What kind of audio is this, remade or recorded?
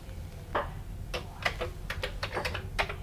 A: recorded